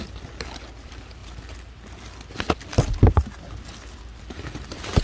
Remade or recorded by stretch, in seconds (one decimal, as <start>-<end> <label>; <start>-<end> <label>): 0.0-5.0 recorded